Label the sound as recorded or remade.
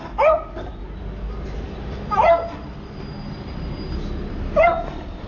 recorded